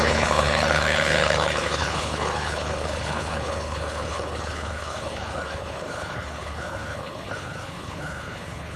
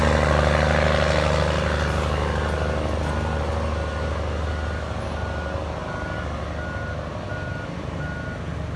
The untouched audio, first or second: second